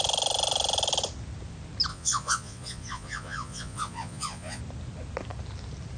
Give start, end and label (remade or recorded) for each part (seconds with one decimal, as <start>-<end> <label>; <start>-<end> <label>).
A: 0.0-1.9 recorded; 1.9-4.6 remade; 4.6-6.0 recorded